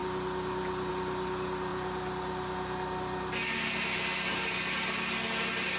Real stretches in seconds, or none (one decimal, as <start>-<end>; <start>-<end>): 0.0-5.8